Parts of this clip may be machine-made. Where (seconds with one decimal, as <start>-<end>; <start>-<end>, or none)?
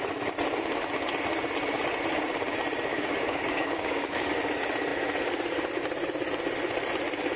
2.9-4.3